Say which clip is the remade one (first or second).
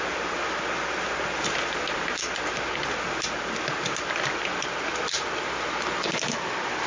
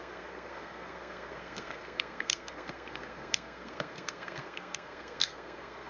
second